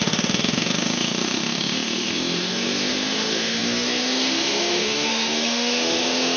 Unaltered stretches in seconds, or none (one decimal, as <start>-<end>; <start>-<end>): none